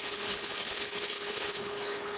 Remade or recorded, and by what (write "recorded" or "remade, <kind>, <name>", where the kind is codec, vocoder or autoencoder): remade, codec, HILCodec